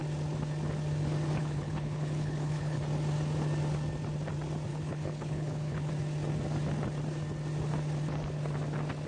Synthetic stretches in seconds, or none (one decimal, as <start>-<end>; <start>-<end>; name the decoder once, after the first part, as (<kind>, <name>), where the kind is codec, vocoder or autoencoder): 1.4-2.8 (codec, HILCodec); 4.7-5.9